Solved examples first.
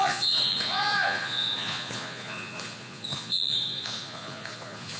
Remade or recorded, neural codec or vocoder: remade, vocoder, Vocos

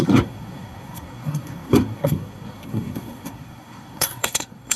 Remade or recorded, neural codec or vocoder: remade, codec, SNAC